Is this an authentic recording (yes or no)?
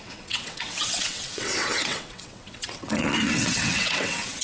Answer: no